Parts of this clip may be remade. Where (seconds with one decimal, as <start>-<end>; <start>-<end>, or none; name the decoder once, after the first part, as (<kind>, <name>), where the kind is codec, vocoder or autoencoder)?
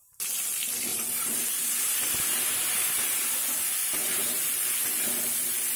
0.9-1.4 (vocoder, BigVGAN v2); 3.8-4.8